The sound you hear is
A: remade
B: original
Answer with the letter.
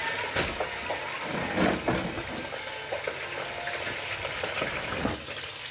B